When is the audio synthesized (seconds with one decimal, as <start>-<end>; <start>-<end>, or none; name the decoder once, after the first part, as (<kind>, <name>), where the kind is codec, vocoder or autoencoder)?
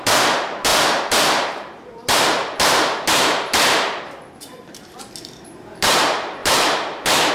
0.0-7.3 (vocoder, BigVGAN v2)